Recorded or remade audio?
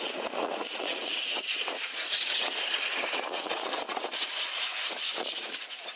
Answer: remade